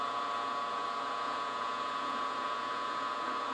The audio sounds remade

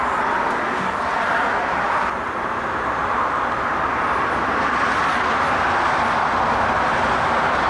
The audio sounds recorded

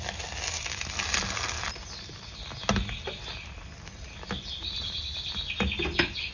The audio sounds recorded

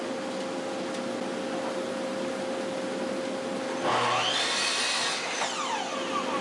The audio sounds recorded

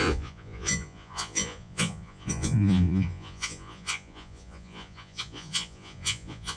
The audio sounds remade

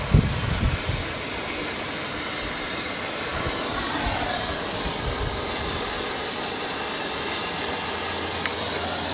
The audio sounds recorded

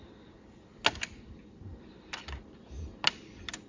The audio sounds recorded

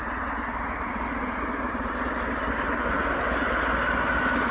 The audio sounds recorded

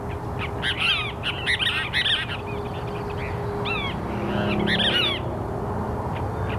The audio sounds recorded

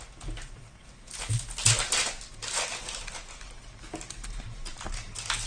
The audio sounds recorded